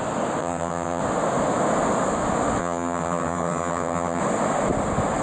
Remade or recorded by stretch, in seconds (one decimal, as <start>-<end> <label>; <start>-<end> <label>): 0.0-0.4 recorded; 0.4-1.0 remade; 1.0-2.6 recorded; 2.6-4.2 remade; 4.2-5.2 recorded